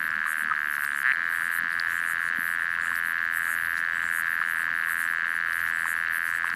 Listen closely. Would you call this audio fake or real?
real